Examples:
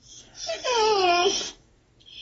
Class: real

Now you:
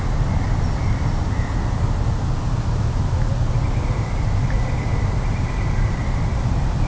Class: real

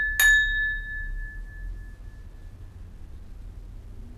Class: real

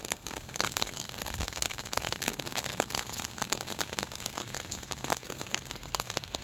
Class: fake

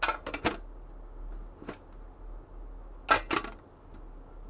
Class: real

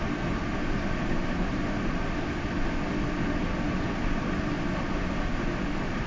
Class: real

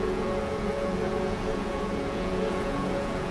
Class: fake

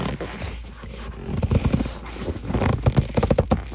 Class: real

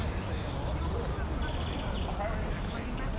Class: real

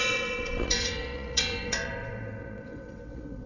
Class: fake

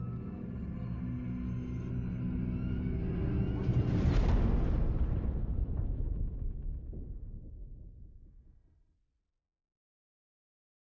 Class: real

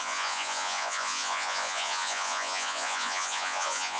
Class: fake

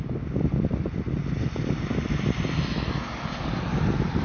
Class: real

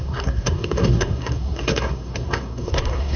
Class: fake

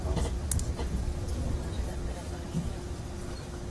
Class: real